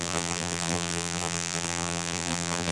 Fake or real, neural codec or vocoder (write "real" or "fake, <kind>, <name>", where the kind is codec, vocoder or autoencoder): fake, vocoder, BigVGAN v2